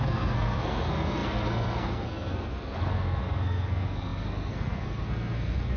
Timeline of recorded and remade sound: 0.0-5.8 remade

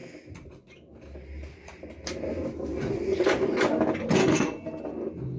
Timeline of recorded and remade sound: 0.0-4.2 recorded; 4.2-4.8 remade; 4.8-5.4 recorded

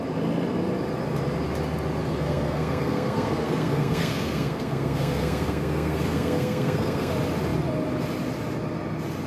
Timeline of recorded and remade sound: 0.0-2.0 recorded; 2.0-7.1 remade; 7.1-9.3 recorded

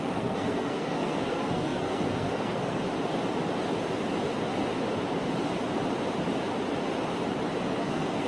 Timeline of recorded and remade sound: 0.0-2.8 remade; 2.8-7.8 recorded; 7.8-8.3 remade

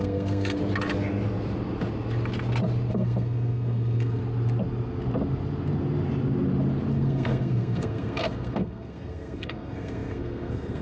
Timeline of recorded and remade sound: 0.0-0.6 remade; 0.6-2.9 recorded; 2.9-4.2 remade; 4.2-6.9 recorded; 6.9-10.8 remade

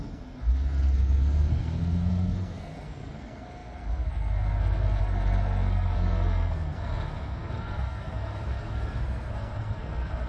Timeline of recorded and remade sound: 0.0-10.3 remade

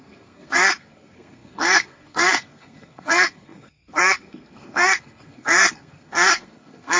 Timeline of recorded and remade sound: 0.0-7.0 remade

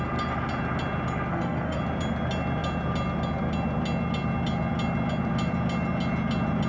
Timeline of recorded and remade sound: 0.0-1.3 recorded; 1.3-1.8 remade; 1.8-6.7 recorded